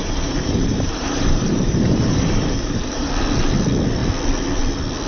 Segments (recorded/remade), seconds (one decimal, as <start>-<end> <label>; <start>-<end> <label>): 0.0-3.1 remade; 3.1-5.1 recorded